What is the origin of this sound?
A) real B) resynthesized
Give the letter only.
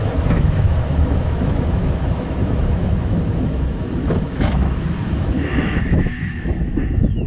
B